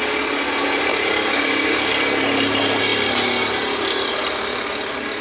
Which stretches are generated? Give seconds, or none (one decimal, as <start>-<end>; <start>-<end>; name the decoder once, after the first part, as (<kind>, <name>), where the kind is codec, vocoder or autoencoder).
0.9-1.9 (codec, DAC)